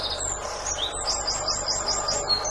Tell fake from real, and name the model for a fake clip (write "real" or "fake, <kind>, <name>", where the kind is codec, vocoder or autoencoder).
real